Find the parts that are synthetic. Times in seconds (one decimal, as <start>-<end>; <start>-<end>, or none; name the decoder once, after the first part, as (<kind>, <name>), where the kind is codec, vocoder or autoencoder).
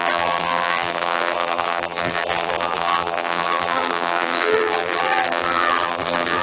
0.0-6.4 (vocoder, BigVGAN v2)